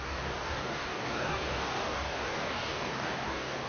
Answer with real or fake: fake